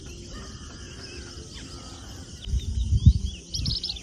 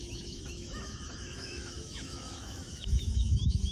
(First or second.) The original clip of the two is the first